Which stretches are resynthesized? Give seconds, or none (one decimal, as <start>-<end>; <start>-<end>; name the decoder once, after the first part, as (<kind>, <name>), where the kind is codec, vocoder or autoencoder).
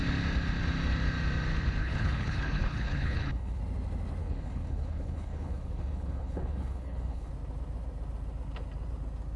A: 1.8-3.6 (codec, HILCodec); 4.2-7.3